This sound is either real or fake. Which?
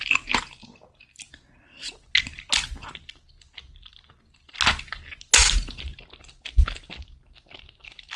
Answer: real